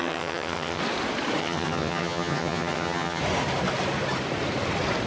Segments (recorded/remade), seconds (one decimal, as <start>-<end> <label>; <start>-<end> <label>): 0.0-0.8 remade; 0.8-1.4 recorded; 1.4-3.2 remade; 3.2-5.1 recorded